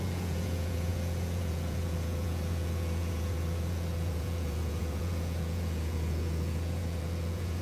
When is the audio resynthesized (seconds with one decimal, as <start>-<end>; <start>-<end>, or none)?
0.0-7.6